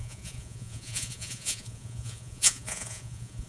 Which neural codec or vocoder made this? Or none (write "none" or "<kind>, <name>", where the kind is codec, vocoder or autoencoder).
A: vocoder, Vocos